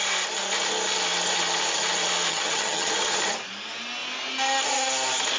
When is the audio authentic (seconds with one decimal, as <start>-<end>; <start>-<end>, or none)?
0.0-2.3; 2.9-5.4

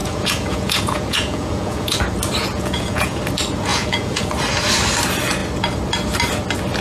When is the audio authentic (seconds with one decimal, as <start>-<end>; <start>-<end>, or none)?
2.0-2.4; 3.2-3.7; 4.3-6.8

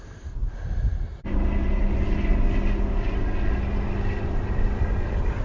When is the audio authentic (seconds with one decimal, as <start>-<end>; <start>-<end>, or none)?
0.0-5.4

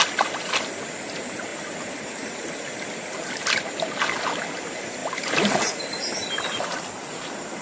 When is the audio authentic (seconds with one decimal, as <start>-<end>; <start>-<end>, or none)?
0.0-1.5; 2.5-5.0; 5.7-7.6

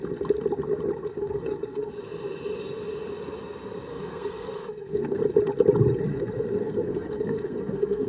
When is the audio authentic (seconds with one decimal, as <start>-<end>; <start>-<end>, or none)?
0.0-1.1; 1.9-3.9; 5.2-6.1